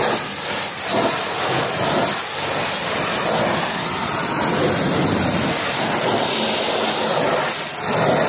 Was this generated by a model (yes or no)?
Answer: no